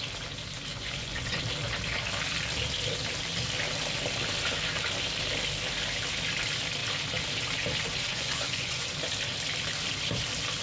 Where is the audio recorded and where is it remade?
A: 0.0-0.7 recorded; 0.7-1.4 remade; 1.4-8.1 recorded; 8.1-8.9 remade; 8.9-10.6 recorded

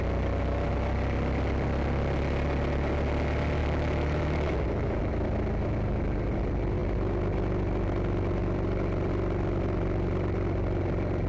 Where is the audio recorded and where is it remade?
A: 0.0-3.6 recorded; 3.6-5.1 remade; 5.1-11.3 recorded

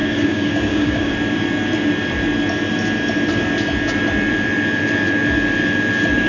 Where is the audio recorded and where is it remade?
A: 0.0-1.1 remade; 1.1-6.3 recorded

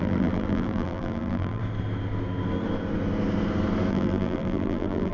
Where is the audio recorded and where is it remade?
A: 0.0-1.6 remade; 1.6-3.9 recorded; 3.9-5.1 remade

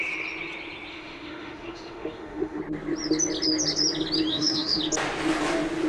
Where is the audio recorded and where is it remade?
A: 0.0-0.9 recorded; 0.9-2.6 remade; 2.6-4.3 recorded; 4.3-4.8 remade; 4.8-5.9 recorded